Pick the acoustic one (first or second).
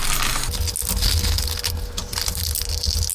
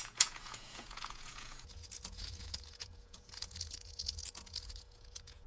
first